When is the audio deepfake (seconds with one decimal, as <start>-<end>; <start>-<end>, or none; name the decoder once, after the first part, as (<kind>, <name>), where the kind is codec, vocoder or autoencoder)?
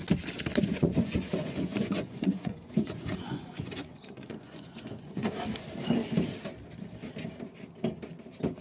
0.5-5.3 (vocoder, Vocos)